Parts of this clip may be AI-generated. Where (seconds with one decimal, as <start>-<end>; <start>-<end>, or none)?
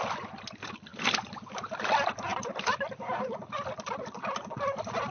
0.9-1.9; 2.3-3.9